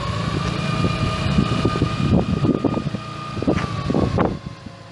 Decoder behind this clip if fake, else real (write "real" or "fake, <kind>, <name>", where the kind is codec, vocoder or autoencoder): real